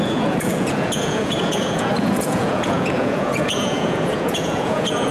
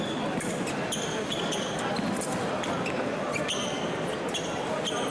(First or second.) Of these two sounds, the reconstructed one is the first